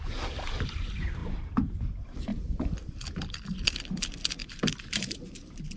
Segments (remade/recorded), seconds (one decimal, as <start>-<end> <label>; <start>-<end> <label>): 0.0-2.3 recorded; 2.3-2.9 remade; 2.9-4.4 recorded; 4.4-5.8 remade